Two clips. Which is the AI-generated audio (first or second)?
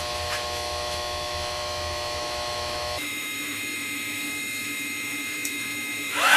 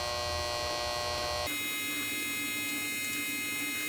first